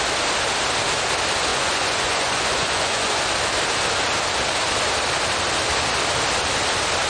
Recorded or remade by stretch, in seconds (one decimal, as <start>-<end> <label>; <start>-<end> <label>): 0.0-1.5 recorded; 1.5-3.2 remade; 3.2-7.1 recorded